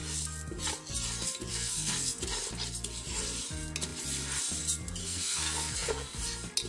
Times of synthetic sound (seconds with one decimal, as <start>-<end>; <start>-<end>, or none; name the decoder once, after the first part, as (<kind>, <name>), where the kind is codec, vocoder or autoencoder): 1.5-2.2 (codec, SNAC); 5.0-6.2

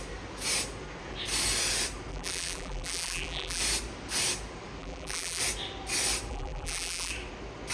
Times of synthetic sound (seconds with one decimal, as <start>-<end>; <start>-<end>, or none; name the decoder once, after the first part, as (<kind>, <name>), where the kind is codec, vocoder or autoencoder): 2.1-3.6 (vocoder, BigVGAN v2); 4.8-5.4; 6.3-7.1

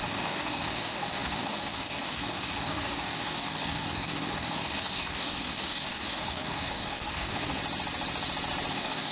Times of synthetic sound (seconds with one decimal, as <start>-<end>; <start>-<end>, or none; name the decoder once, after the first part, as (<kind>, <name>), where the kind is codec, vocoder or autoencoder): 0.0-7.6 (codec, DAC); 8.7-9.1